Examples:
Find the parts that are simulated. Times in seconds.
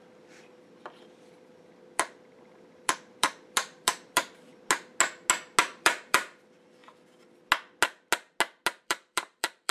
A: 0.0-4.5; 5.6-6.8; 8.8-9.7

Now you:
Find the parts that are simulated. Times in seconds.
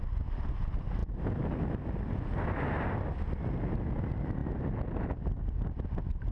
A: none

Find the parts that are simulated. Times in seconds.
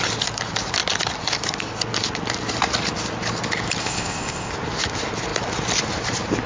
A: 3.8-4.5